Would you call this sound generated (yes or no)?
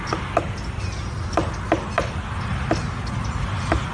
no